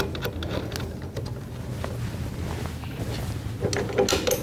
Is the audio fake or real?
real